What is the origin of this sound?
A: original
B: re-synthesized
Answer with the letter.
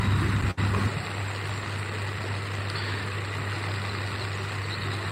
A